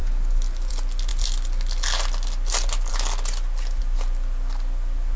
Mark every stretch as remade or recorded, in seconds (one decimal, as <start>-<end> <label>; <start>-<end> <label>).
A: 0.0-5.2 recorded